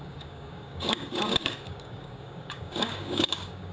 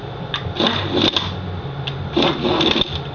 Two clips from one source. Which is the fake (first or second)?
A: first